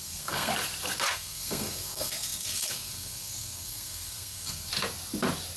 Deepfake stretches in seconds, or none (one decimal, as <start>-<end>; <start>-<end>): 0.0-0.5; 1.1-4.7